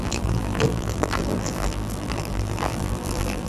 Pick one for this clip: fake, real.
fake